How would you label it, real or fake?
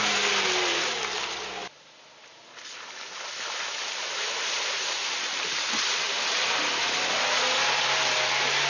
real